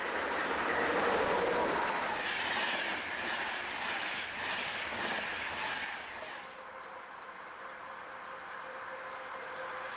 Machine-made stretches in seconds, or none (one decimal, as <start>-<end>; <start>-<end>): 0.0-1.2; 2.1-7.2